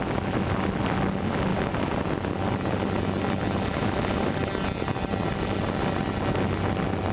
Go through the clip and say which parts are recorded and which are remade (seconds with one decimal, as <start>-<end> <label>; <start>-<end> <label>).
0.0-7.1 recorded